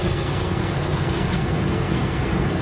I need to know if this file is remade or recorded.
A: remade